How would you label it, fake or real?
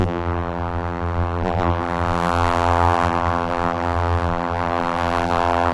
fake